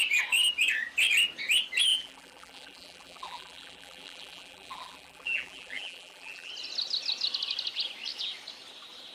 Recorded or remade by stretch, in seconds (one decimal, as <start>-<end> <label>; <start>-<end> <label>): 0.0-1.9 recorded; 1.9-6.5 remade; 6.5-9.1 recorded